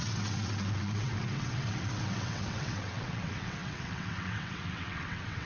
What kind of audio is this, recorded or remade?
remade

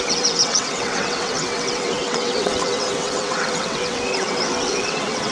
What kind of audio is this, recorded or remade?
remade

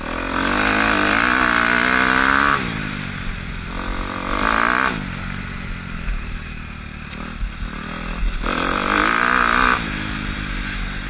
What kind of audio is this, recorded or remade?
recorded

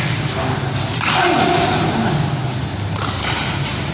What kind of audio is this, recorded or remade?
recorded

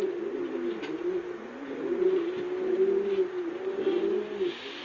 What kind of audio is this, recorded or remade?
recorded